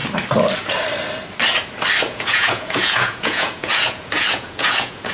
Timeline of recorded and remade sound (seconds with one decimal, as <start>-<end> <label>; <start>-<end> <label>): 0.0-2.0 recorded; 2.0-5.1 remade